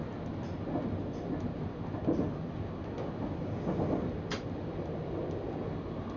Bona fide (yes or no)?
yes